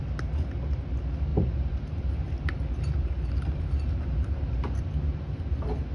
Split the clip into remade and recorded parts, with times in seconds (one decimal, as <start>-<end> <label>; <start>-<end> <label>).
0.0-1.3 recorded; 1.3-4.8 remade; 4.8-5.9 recorded